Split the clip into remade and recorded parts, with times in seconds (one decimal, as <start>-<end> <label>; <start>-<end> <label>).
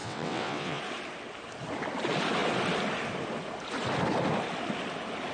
0.0-0.8 remade; 0.8-5.3 recorded